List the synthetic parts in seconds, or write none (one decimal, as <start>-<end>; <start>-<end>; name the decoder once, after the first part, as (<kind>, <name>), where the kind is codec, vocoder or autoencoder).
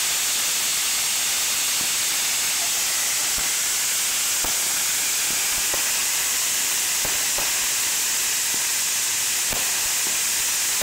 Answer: 6.0-7.0 (vocoder, BigVGAN v2)